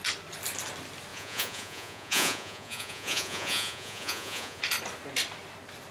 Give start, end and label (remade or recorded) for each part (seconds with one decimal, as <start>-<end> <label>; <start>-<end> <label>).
0.0-1.1 recorded; 1.1-4.6 remade; 4.6-5.9 recorded